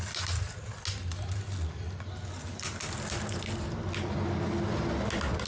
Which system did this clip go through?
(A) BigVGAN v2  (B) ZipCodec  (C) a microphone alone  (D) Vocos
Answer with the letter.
C